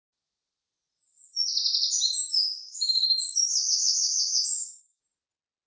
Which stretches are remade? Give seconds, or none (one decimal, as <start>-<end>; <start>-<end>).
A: 2.3-5.0